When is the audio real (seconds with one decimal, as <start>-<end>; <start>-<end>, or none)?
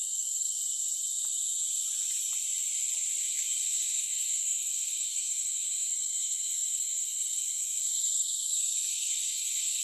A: 0.6-3.2